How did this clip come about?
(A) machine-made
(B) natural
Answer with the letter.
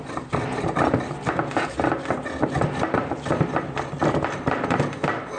B